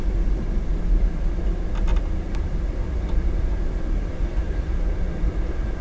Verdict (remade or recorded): remade